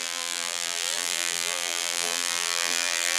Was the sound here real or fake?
fake